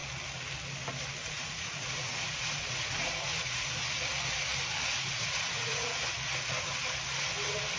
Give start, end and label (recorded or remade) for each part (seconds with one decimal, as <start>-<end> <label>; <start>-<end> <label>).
0.0-1.2 recorded; 1.2-3.7 remade; 3.7-4.9 recorded; 4.9-6.0 remade; 6.0-7.8 recorded